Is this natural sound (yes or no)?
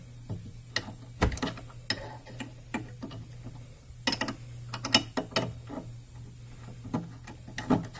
yes